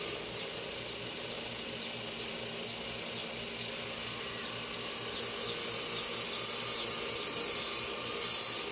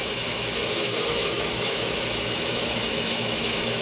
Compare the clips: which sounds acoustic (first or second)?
first